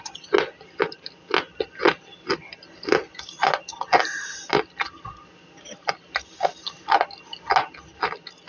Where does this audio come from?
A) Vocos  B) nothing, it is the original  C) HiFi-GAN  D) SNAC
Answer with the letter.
B